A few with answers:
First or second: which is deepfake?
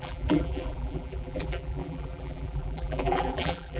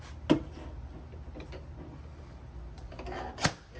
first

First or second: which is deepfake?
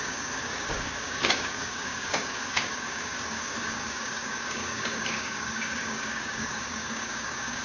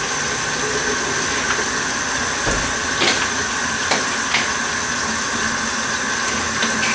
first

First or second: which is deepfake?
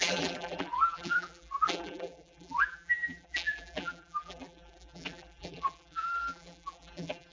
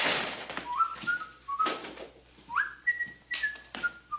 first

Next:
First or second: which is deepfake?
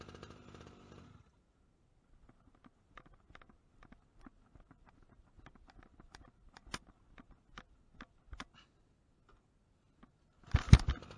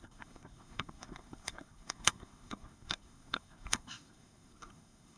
second